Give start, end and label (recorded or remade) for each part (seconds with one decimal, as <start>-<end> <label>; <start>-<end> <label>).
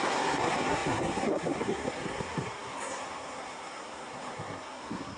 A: 0.0-5.2 remade